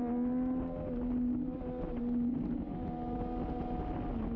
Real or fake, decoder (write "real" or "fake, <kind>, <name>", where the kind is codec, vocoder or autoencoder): real